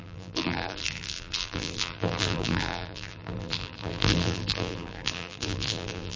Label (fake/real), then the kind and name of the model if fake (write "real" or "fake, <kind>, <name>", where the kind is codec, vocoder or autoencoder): fake, vocoder, BigVGAN v2